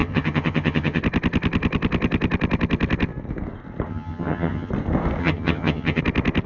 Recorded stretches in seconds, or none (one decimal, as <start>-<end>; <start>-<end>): 1.0-3.9; 4.7-5.2; 6.0-6.5